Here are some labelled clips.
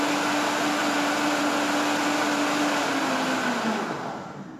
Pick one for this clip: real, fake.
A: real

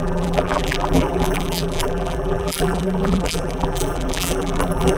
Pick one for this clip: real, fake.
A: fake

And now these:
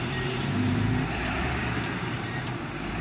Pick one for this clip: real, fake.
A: fake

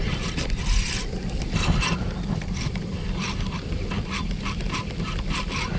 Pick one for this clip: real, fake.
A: real